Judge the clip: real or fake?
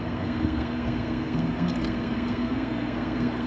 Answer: fake